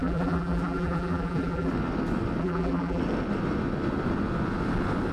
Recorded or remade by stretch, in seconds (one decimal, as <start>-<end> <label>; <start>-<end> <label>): 0.0-1.7 remade; 1.7-2.4 recorded; 2.4-3.0 remade; 3.0-5.1 recorded